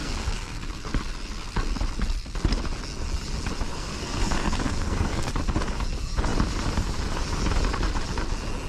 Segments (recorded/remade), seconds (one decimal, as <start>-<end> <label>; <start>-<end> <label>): 0.0-0.9 remade; 0.9-3.7 recorded; 3.7-5.3 remade; 5.3-8.7 recorded